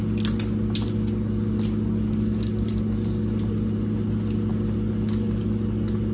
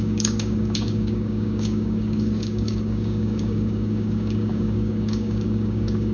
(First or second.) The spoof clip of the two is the second